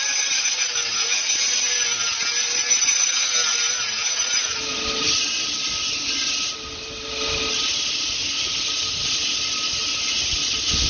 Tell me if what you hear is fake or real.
real